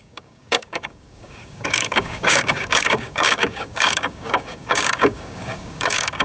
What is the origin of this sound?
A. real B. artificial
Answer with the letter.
B